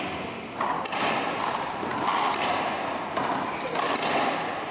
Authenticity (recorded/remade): recorded